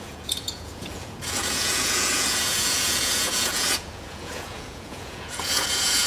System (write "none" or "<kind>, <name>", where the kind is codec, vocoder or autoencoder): vocoder, Vocos